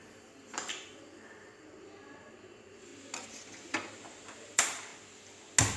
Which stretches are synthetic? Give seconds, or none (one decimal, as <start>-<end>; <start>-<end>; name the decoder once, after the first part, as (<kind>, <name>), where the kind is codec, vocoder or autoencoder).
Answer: 0.0-2.9 (vocoder, BigVGAN v2); 3.9-4.9